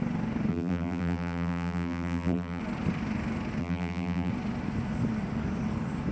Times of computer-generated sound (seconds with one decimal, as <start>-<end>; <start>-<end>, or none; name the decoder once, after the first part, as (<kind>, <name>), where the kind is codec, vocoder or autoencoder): 0.5-2.6 (vocoder, BigVGAN v2); 3.6-4.3